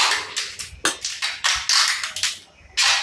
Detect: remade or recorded recorded